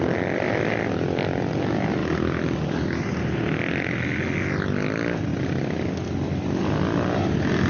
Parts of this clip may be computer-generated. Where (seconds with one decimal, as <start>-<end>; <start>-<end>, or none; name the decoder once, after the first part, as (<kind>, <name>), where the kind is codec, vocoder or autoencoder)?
none